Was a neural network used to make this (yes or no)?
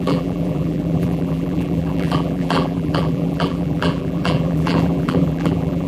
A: yes